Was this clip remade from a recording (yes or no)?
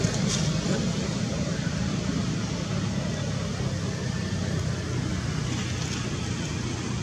no